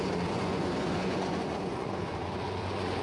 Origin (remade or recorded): remade